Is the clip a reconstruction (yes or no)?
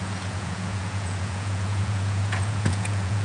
yes